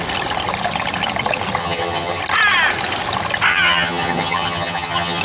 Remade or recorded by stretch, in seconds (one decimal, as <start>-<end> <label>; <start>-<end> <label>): 0.0-1.6 recorded; 1.6-2.2 remade; 2.2-3.5 recorded; 3.5-5.2 remade